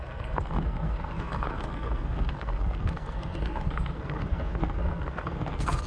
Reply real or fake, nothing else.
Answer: fake